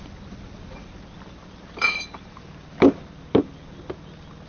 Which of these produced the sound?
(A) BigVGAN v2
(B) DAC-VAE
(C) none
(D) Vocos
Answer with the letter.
C